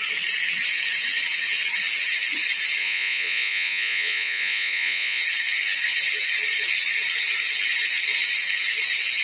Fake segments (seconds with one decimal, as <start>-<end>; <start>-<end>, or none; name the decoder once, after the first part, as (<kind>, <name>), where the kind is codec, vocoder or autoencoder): 2.8-5.2 (vocoder, Vocos)